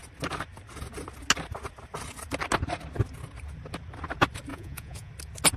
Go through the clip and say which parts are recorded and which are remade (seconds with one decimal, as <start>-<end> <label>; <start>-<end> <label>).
0.0-4.5 recorded; 4.5-5.1 remade; 5.1-5.6 recorded